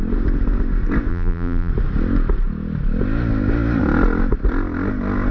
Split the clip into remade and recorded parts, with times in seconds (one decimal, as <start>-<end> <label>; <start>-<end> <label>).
0.0-1.1 recorded; 1.1-1.7 remade; 1.7-5.3 recorded